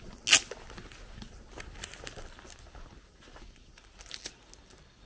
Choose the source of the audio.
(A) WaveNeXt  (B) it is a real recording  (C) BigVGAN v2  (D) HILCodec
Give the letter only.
B